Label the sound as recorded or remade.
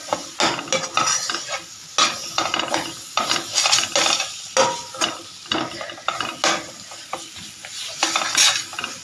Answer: recorded